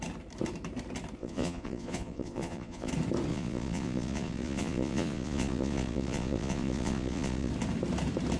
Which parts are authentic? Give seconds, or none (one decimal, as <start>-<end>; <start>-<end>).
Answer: 0.0-1.2; 2.9-3.3; 7.5-8.4